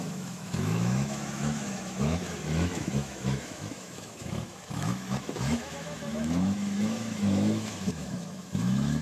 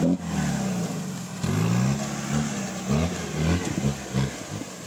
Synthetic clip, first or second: first